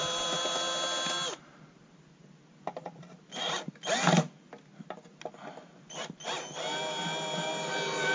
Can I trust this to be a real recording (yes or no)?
yes